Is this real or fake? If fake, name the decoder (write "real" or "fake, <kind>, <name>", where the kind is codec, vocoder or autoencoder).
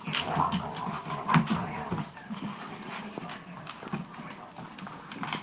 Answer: real